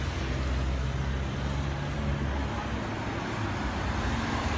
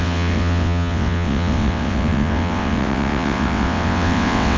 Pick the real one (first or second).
first